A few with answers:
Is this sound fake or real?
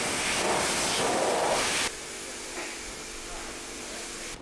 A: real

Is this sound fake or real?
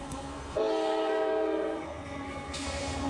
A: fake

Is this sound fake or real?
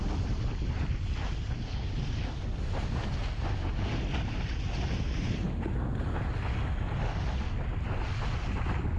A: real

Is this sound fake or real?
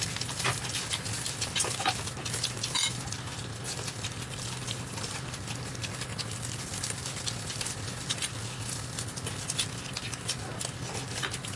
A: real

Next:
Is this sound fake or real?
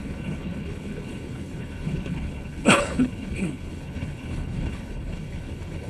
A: fake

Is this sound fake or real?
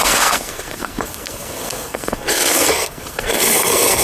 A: fake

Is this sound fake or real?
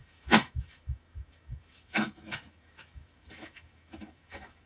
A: fake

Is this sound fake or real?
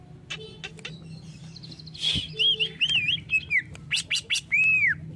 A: real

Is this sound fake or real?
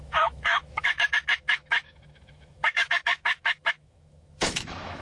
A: fake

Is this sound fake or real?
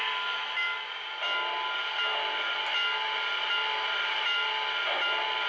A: real